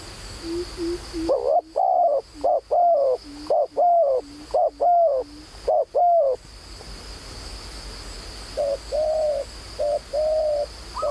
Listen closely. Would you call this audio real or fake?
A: real